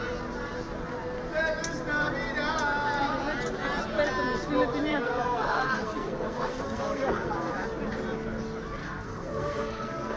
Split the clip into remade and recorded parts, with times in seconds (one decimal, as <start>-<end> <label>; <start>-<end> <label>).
0.0-4.9 recorded; 4.9-7.5 remade; 7.5-8.8 recorded; 8.8-10.2 remade